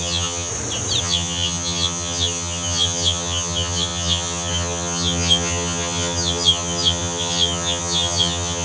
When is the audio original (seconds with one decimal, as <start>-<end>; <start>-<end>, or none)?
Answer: 0.5-1.0